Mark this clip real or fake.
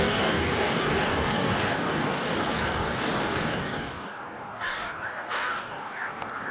fake